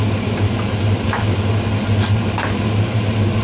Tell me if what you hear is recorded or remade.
recorded